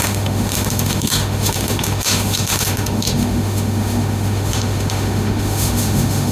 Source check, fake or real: fake